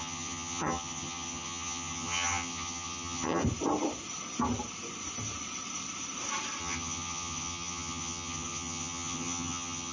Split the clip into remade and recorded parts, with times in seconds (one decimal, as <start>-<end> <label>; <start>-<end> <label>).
0.0-3.4 remade; 3.4-6.6 recorded; 6.6-9.9 remade